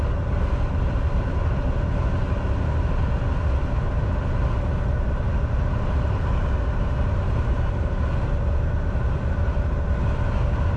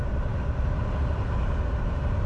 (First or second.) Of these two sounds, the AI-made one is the second